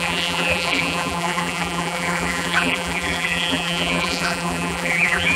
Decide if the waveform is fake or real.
fake